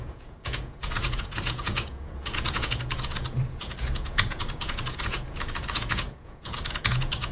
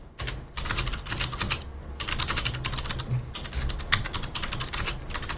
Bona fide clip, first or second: second